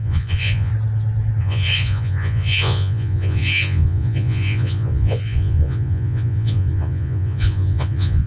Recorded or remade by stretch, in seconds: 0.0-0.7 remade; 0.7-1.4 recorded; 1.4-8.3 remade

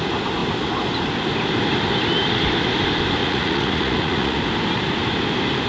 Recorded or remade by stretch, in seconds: 0.0-3.2 recorded; 3.2-4.4 remade; 4.4-5.7 recorded